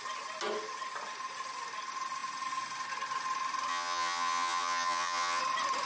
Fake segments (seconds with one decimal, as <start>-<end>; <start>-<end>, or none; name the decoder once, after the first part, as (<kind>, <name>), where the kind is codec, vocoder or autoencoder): 3.7-5.4 (vocoder, HiFi-GAN)